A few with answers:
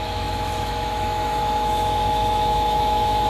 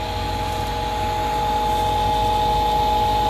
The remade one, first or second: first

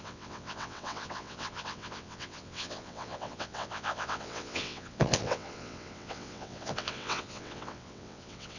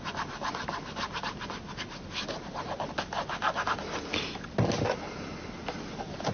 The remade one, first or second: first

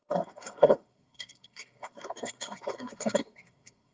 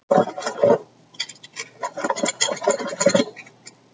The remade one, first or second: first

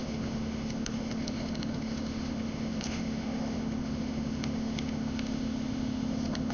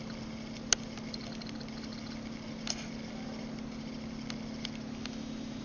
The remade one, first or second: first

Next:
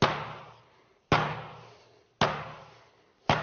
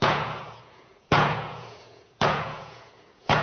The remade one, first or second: second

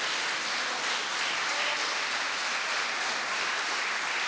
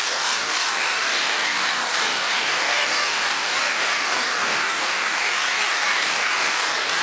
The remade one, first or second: second